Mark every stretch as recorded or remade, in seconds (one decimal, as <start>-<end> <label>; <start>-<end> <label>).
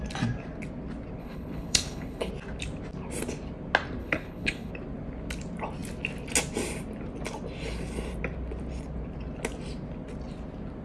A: 0.0-1.2 recorded; 1.2-2.3 remade; 2.3-4.0 recorded; 4.0-4.7 remade; 4.7-10.8 recorded